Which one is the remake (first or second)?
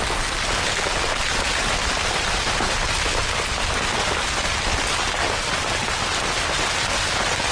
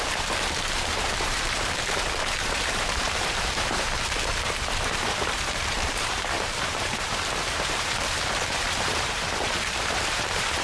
second